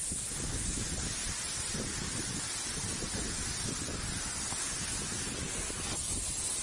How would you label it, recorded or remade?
recorded